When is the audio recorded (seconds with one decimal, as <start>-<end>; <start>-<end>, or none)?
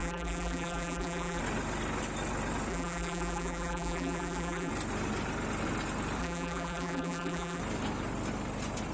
1.4-2.7; 4.7-6.2; 7.6-8.9